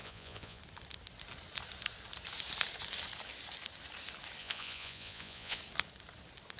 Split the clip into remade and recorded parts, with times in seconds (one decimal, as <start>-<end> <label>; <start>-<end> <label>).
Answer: 0.0-0.6 remade; 0.6-4.4 recorded; 4.4-5.6 remade; 5.6-6.6 recorded